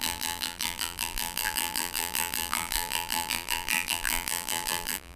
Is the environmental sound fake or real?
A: fake